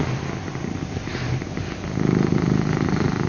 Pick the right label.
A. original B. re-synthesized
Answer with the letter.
A